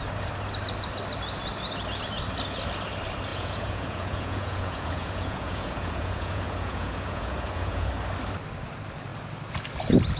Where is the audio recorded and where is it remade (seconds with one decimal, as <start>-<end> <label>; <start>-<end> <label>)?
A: 0.0-3.3 recorded; 3.3-7.9 remade; 7.9-10.2 recorded